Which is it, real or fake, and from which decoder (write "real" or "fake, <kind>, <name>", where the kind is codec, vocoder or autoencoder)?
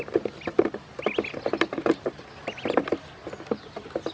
real